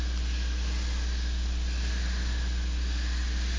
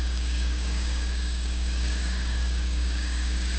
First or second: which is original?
first